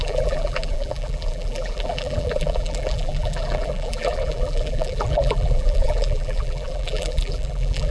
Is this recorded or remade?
remade